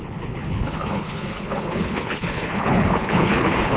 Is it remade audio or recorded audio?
remade